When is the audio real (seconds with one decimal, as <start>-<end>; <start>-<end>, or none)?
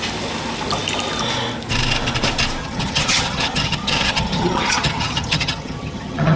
0.0-2.6